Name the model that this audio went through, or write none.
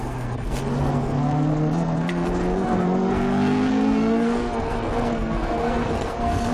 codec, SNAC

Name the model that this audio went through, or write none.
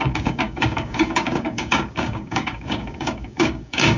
codec, DAC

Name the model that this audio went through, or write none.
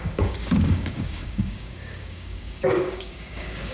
codec, DAC